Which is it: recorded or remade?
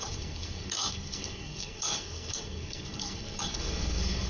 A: remade